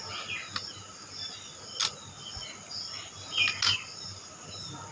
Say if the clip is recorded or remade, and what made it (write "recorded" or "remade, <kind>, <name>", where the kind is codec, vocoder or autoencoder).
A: recorded